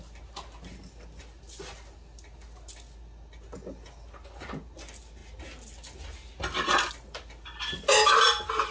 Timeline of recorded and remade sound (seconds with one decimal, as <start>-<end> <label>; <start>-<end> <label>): 0.0-8.7 recorded